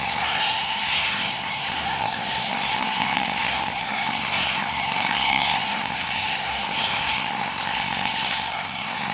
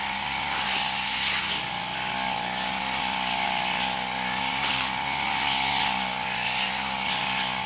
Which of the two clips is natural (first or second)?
second